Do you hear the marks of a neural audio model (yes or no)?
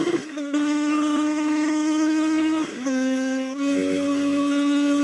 yes